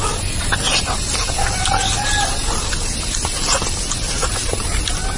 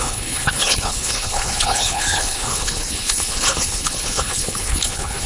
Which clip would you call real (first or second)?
first